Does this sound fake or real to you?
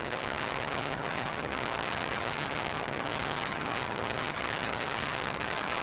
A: fake